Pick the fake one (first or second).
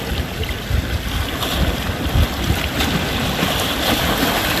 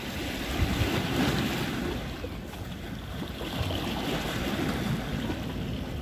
first